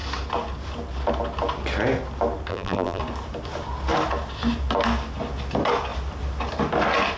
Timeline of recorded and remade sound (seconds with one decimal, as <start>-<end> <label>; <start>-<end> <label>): 0.0-2.5 recorded; 2.5-3.0 remade; 3.0-7.2 recorded